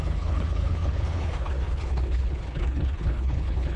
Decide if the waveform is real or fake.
fake